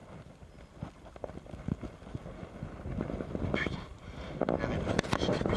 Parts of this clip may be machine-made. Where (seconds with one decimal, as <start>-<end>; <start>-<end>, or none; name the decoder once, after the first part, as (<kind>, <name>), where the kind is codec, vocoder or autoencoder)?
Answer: none